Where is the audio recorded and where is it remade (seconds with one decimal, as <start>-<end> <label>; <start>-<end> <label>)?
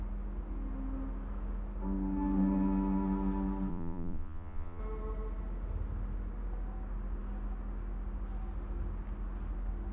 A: 0.0-3.7 recorded; 3.7-4.8 remade; 4.8-9.9 recorded